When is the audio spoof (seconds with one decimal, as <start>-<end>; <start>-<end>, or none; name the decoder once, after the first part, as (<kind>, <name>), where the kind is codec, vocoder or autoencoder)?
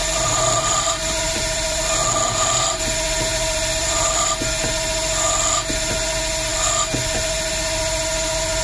0.0-1.8 (vocoder, BigVGAN v2); 3.3-4.3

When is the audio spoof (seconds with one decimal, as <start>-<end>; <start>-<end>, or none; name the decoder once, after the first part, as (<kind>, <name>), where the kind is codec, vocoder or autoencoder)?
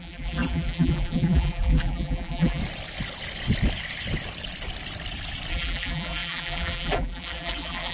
0.0-2.6 (vocoder, BigVGAN v2); 5.5-7.9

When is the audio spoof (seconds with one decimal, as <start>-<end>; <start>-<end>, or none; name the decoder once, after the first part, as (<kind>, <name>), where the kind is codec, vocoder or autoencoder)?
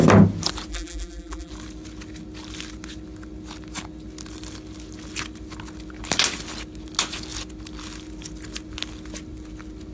0.7-1.5 (vocoder, BigVGAN v2)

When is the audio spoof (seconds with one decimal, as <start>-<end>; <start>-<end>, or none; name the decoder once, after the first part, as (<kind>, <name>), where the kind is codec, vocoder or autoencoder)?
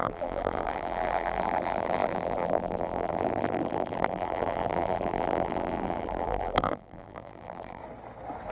0.0-7.8 (vocoder, BigVGAN v2)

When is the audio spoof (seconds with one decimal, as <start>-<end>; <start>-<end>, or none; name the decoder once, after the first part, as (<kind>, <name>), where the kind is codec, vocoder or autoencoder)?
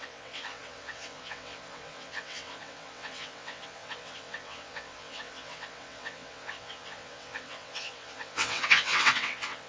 0.0-9.7 (vocoder, WaveNeXt)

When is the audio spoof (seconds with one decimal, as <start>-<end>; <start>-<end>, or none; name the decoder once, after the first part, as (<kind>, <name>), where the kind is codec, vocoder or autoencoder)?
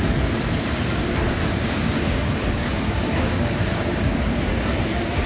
1.4-2.2 (codec, DAC); 2.7-4.4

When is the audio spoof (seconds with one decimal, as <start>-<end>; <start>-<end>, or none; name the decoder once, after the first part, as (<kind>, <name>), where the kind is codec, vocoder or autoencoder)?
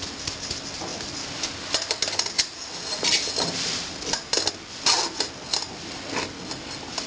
none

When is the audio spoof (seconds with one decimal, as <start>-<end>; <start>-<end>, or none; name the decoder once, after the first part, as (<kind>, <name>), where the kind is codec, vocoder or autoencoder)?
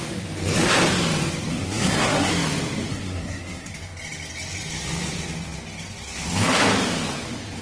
1.5-2.3 (codec, SNAC); 2.9-3.7